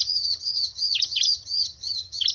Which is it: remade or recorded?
remade